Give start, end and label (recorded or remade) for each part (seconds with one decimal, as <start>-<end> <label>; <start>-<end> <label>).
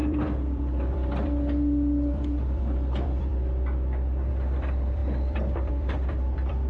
0.0-3.3 remade; 3.3-4.3 recorded; 4.3-6.7 remade